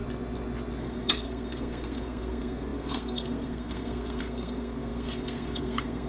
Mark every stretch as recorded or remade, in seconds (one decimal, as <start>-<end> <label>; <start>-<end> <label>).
0.0-0.8 recorded; 0.8-6.1 remade